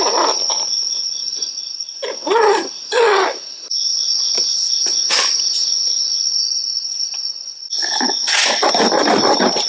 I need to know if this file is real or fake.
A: real